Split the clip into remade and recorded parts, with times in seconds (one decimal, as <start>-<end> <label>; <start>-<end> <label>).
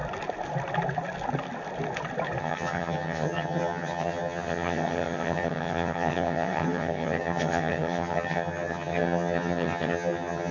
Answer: 0.0-2.4 recorded; 2.4-10.5 remade